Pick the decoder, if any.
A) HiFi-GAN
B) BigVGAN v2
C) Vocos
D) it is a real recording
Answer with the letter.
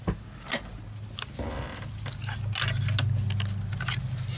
D